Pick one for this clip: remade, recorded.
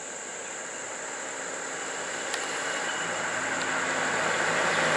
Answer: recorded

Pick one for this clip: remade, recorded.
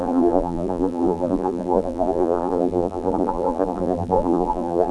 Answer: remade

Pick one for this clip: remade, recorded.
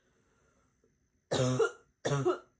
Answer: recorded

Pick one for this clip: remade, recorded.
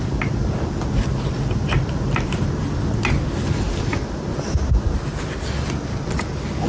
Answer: recorded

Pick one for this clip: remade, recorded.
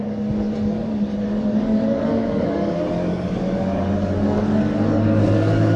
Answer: remade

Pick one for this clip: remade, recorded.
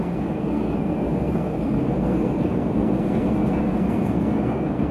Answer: remade